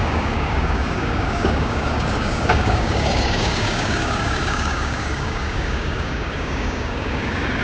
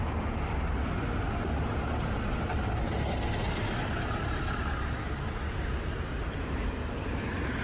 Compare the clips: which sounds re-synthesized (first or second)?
first